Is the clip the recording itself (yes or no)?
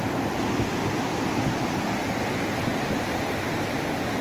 yes